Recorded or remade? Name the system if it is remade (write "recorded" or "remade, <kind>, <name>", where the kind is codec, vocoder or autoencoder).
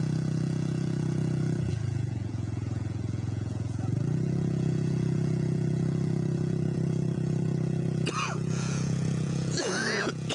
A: remade, vocoder, Vocos